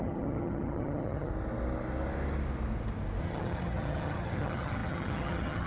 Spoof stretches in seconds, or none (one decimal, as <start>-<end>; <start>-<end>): 0.0-1.3; 3.2-5.7